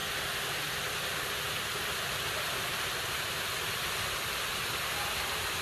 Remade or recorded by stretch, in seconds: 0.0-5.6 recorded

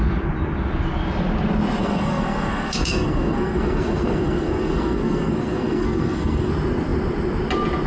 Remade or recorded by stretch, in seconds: 0.0-1.8 recorded; 1.8-6.5 remade; 6.5-7.9 recorded

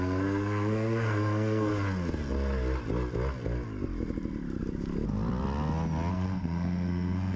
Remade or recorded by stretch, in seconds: 0.0-1.7 remade; 1.7-6.1 recorded; 6.1-7.4 remade

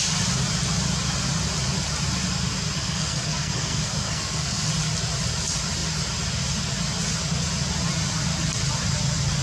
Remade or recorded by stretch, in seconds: 0.0-2.8 recorded; 2.8-4.7 remade; 4.7-9.4 recorded

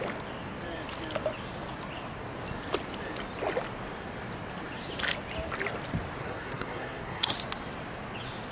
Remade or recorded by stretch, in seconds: 0.0-6.2 recorded; 6.2-7.3 remade; 7.3-8.5 recorded

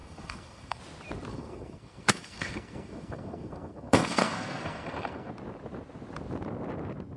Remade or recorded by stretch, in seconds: 0.0-0.8 remade; 0.8-1.3 recorded; 1.3-5.3 remade; 5.3-7.2 recorded